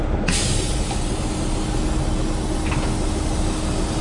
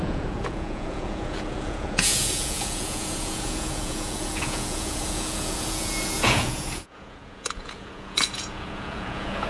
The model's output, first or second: second